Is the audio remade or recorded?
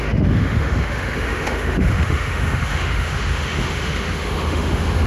remade